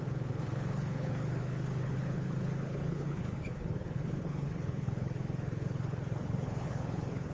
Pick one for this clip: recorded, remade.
remade